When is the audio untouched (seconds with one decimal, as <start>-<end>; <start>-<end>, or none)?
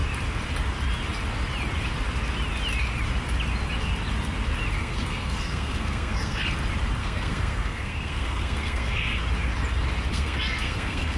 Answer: 0.0-4.8; 6.4-7.0; 9.2-10.1